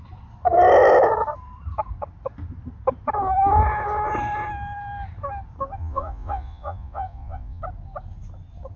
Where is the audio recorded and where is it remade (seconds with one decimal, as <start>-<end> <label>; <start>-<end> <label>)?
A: 0.0-5.8 recorded; 5.8-7.6 remade; 7.6-8.8 recorded

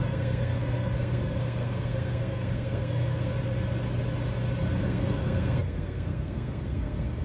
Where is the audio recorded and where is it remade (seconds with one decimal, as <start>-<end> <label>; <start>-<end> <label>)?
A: 0.0-3.3 remade; 3.3-4.8 recorded; 4.8-7.2 remade

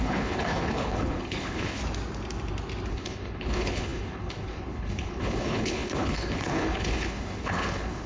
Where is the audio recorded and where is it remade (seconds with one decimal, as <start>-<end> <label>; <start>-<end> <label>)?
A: 0.0-1.8 remade; 1.8-2.9 recorded; 2.9-8.1 remade

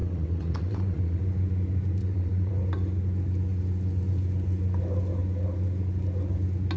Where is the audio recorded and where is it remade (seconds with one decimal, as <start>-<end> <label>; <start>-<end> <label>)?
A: 0.0-1.2 remade; 1.2-2.0 recorded; 2.0-2.5 remade; 2.5-6.8 recorded

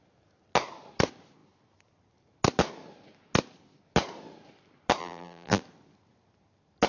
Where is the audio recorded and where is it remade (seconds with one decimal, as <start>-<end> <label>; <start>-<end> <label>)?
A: 0.0-5.0 recorded; 5.0-5.6 remade; 5.6-6.9 recorded

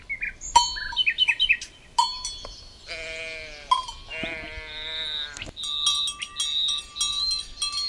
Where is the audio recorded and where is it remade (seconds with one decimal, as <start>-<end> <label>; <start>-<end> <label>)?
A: 0.0-7.9 recorded

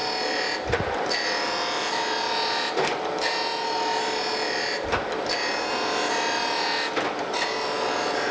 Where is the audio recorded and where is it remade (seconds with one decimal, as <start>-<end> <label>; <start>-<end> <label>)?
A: 0.0-8.3 recorded